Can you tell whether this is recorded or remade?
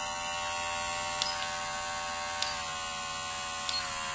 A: recorded